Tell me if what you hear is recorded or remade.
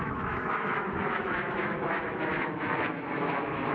remade